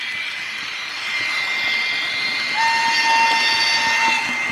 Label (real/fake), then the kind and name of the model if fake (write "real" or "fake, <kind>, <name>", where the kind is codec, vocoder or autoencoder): real